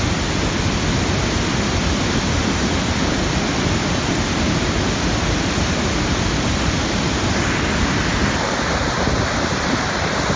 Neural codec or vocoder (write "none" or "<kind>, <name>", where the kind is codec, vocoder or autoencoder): none